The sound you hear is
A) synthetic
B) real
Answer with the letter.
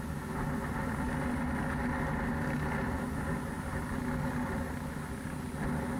B